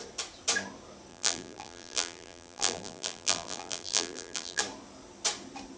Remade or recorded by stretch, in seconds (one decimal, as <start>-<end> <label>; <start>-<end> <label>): 0.0-1.1 recorded; 1.1-4.6 remade; 4.6-5.8 recorded